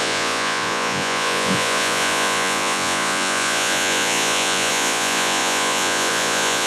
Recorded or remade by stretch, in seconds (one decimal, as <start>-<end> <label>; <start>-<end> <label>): 0.0-6.7 remade